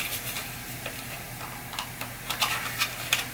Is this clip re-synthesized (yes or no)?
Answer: no